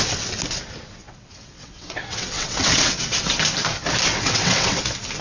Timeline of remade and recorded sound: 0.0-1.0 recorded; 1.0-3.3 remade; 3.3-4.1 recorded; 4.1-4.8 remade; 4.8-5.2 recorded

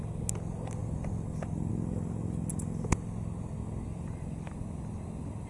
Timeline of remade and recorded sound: 0.0-5.5 recorded

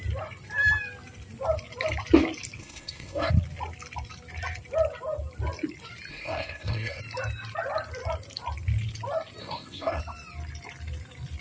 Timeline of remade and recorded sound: 0.0-2.6 recorded; 2.6-3.3 remade; 3.3-6.1 recorded; 6.1-7.0 remade; 7.0-9.4 recorded; 9.4-10.0 remade; 10.0-11.4 recorded

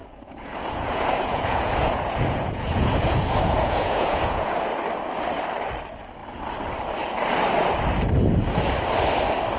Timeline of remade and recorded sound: 0.0-4.6 remade; 4.6-9.6 recorded

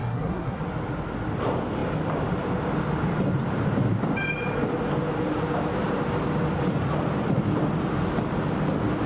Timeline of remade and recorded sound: 0.0-0.6 remade; 0.6-9.1 recorded

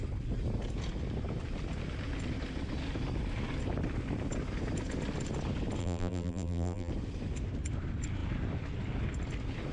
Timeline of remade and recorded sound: 0.0-5.8 recorded; 5.8-6.9 remade; 6.9-9.7 recorded